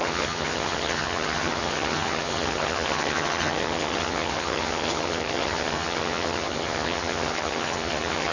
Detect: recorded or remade remade